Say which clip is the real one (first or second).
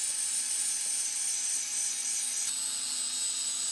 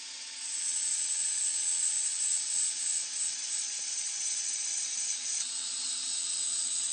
first